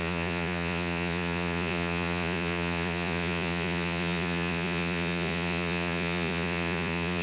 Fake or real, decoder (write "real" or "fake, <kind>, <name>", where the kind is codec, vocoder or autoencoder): fake, vocoder, Vocos